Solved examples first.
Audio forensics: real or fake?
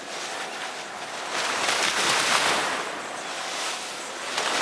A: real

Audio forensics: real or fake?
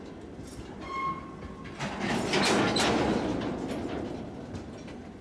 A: real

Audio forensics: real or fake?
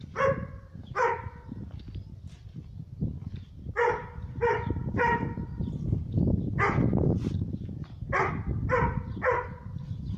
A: real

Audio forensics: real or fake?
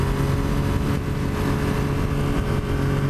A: real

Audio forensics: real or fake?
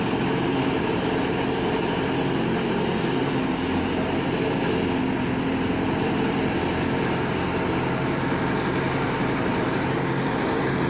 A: fake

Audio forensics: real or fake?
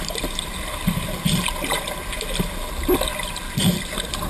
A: real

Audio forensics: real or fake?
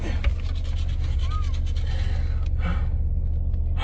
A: real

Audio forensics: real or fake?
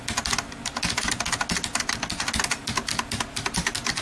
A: real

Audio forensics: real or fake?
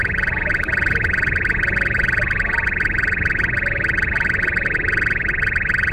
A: real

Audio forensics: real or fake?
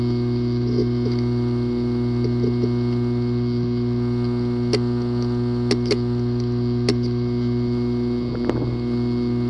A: real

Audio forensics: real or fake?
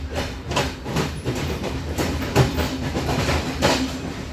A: fake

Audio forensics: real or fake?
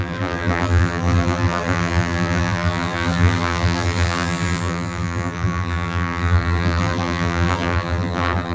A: fake